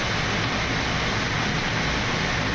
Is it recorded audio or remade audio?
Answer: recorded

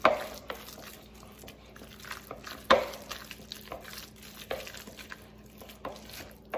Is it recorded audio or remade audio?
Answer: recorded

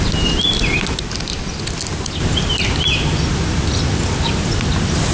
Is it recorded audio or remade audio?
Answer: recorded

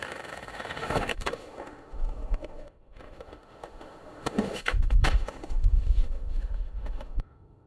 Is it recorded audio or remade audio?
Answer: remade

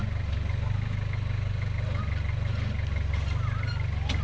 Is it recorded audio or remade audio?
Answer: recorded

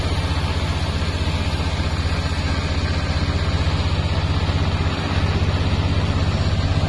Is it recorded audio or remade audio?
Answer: recorded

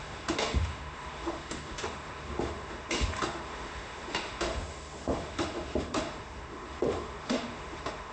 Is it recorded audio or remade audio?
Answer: remade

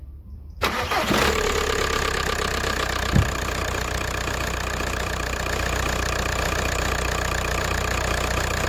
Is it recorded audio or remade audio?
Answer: remade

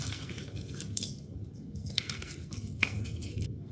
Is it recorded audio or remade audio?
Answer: remade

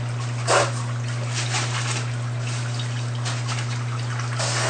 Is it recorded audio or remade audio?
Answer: recorded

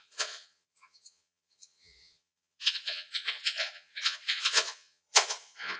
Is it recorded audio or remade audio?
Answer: remade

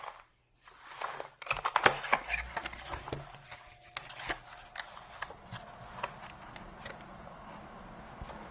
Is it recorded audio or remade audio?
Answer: remade